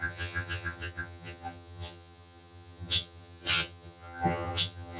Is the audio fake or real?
fake